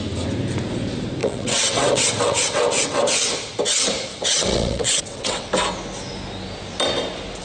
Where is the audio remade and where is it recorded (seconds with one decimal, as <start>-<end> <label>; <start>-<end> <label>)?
0.0-1.2 recorded; 1.2-3.0 remade; 3.0-4.1 recorded; 4.1-5.5 remade; 5.5-7.4 recorded

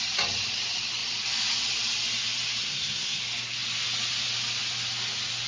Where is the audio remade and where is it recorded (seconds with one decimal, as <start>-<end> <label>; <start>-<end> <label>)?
0.0-2.6 recorded; 2.6-3.2 remade; 3.2-5.5 recorded

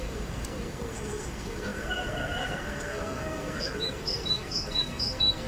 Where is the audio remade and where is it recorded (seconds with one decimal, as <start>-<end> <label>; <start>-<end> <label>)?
0.0-5.5 remade

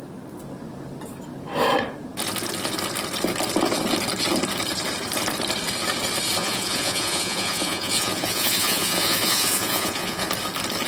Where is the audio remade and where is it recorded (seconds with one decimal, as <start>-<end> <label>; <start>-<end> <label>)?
0.0-6.4 recorded; 6.4-10.3 remade; 10.3-10.9 recorded

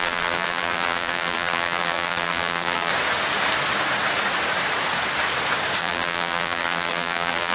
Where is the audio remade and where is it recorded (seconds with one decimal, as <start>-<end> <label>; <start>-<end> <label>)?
0.0-2.9 remade; 2.9-5.8 recorded; 5.8-7.5 remade